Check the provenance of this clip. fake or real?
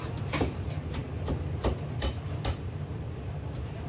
real